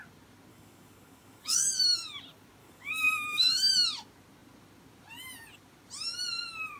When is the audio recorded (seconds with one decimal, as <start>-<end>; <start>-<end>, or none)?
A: 0.0-0.5; 1.8-2.6; 3.7-6.8